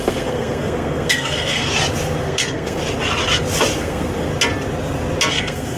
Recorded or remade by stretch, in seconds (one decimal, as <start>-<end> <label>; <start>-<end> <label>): 0.0-1.7 remade; 1.7-2.2 recorded; 2.2-2.8 remade; 2.8-3.8 recorded; 3.8-4.3 remade; 4.3-5.3 recorded; 5.3-5.8 remade

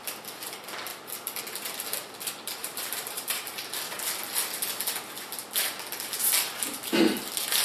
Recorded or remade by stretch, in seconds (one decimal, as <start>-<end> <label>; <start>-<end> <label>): 0.0-2.6 recorded; 2.6-3.7 remade; 3.7-7.6 recorded

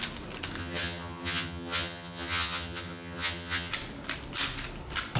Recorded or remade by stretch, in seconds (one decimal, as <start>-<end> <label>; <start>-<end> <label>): 0.0-0.6 recorded; 0.6-3.7 remade; 3.7-5.2 recorded